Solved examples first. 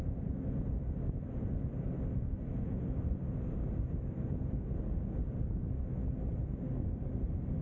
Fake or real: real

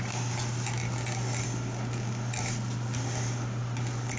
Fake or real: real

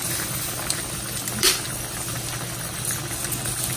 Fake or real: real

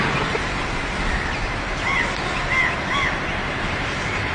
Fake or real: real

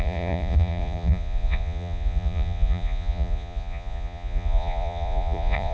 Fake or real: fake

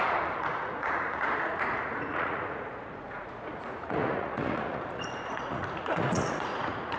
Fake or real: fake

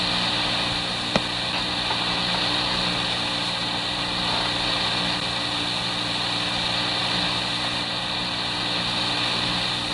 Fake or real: real